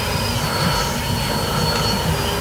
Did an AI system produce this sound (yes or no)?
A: no